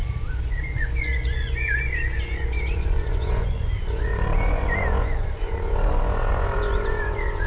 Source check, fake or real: fake